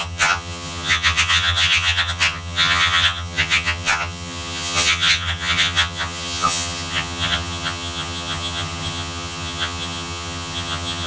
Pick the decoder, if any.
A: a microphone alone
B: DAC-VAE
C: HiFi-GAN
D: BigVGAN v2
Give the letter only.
C